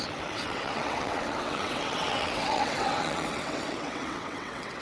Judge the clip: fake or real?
fake